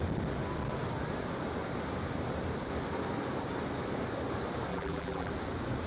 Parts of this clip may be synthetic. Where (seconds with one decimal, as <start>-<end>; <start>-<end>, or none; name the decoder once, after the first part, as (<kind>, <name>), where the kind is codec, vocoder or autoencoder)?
4.7-5.3 (vocoder, BigVGAN v2)